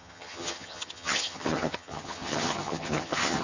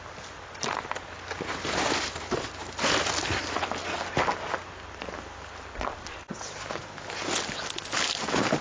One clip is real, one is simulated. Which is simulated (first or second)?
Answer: first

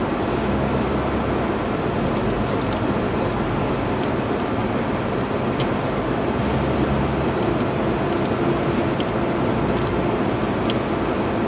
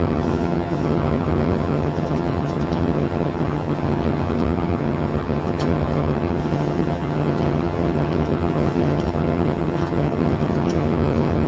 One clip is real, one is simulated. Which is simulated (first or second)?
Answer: second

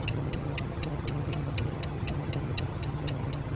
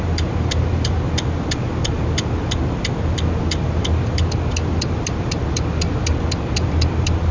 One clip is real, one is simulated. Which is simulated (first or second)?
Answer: first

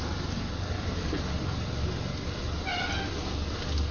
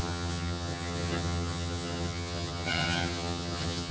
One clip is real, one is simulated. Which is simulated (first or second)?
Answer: second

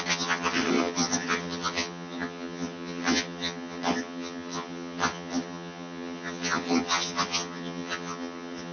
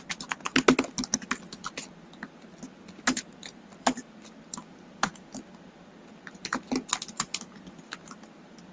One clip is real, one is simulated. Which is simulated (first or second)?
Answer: first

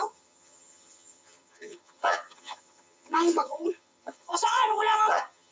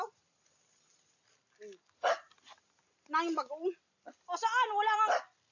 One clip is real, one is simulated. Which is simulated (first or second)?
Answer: first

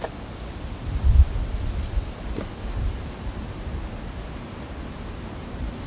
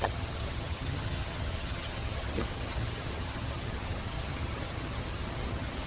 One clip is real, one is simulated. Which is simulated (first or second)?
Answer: second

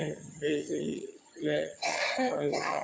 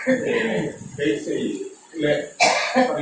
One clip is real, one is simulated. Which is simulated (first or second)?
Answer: first